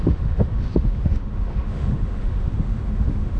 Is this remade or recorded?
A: remade